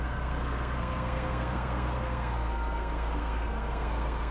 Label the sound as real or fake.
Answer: fake